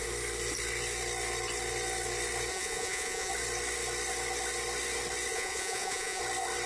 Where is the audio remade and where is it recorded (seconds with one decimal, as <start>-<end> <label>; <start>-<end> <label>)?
0.0-2.5 recorded; 2.5-3.3 remade; 3.3-5.3 recorded; 5.3-6.2 remade; 6.2-6.7 recorded